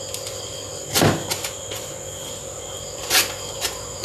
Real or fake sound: real